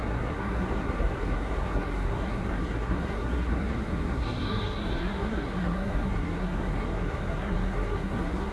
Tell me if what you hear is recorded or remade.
remade